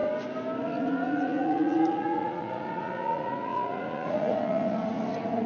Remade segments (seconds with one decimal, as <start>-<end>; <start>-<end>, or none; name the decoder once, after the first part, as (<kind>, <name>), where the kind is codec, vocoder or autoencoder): 0.6-5.5 (vocoder, Vocos)